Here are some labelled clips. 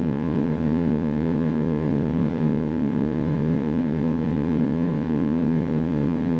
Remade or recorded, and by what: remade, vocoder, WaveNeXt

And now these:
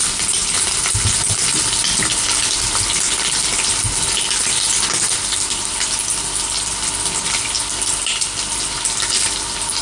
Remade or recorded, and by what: recorded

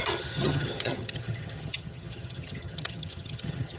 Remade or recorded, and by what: remade, vocoder, HiFi-GAN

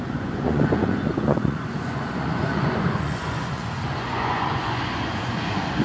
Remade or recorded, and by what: remade, vocoder, Vocos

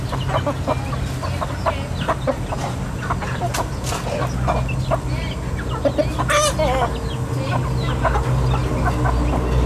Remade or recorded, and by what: recorded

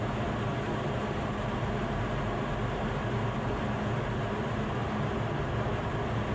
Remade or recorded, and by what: recorded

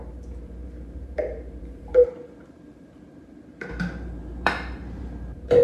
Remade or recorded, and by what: remade, vocoder, BigVGAN v2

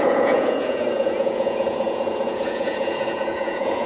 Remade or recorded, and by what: remade, vocoder, Vocos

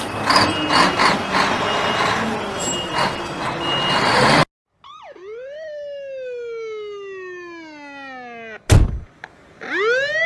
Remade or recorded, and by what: recorded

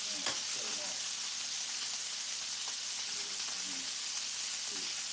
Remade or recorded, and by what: recorded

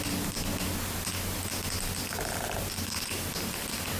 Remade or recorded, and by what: recorded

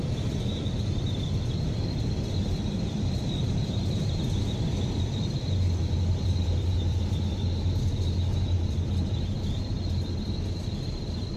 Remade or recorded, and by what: remade, vocoder, BigVGAN v2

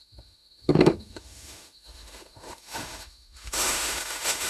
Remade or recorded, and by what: remade, autoencoder, DAC-VAE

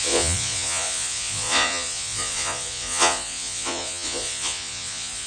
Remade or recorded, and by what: remade, vocoder, Vocos